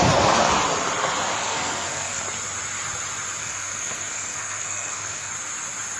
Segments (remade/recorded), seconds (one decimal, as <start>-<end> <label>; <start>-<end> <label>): 0.0-1.4 recorded; 1.4-2.2 remade; 2.2-3.4 recorded; 3.4-5.3 remade; 5.3-6.0 recorded